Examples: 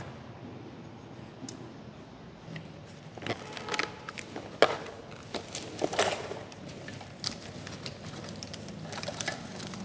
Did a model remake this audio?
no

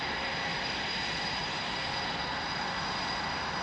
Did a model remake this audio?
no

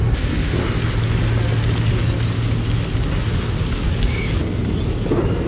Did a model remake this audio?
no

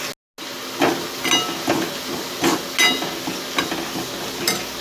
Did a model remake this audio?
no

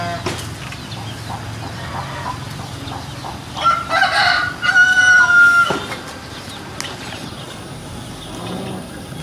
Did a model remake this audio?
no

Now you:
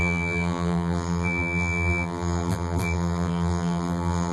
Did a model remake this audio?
yes